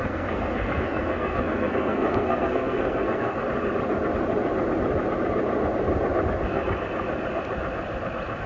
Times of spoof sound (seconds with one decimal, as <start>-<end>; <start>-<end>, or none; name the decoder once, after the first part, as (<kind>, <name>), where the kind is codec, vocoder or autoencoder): 0.0-3.4 (codec, SNAC)